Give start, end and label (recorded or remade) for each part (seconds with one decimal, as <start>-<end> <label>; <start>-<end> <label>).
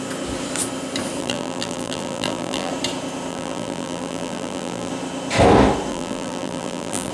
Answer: 0.0-1.2 recorded; 1.2-2.7 remade; 2.7-3.3 recorded; 3.3-4.9 remade; 4.9-5.9 recorded; 5.9-7.1 remade